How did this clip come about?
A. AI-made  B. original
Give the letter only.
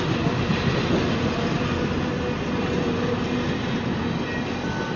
B